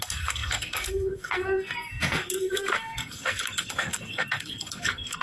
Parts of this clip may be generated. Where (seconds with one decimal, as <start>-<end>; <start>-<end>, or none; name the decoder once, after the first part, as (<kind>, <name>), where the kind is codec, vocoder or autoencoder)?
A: 0.0-5.2 (codec, SNAC)